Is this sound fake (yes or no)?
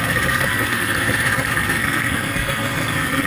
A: yes